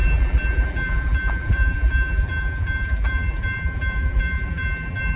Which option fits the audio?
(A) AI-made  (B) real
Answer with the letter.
A